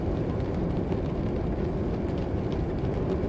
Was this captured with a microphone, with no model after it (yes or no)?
yes